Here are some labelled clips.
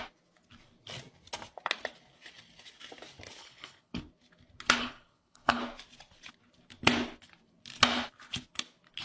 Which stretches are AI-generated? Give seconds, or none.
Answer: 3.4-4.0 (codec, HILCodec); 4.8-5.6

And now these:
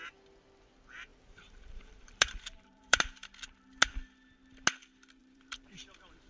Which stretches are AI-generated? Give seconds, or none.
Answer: 1.1-3.0 (vocoder, BigVGAN v2); 5.2-5.8

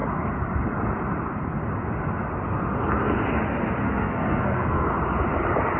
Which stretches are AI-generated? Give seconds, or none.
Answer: 3.8-4.9 (codec, SNAC)